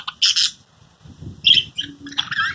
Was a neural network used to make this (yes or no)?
no